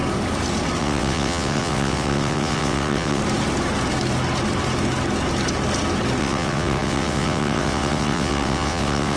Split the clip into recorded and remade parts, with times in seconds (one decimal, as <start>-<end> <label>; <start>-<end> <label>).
0.0-0.8 recorded; 0.8-3.2 remade; 3.2-6.2 recorded; 6.2-9.2 remade